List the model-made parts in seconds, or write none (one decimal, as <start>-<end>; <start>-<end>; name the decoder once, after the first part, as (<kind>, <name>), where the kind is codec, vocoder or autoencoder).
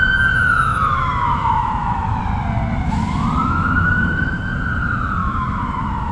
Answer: 0.7-2.2 (autoencoder, DAC-VAE); 3.4-4.5; 5.2-6.1